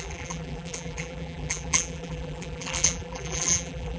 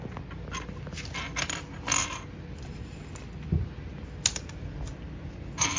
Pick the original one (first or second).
second